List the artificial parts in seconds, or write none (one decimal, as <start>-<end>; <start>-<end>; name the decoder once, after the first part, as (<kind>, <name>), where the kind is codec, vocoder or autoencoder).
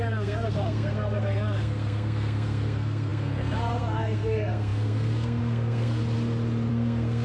0.0-6.0 (codec, SNAC); 6.7-7.2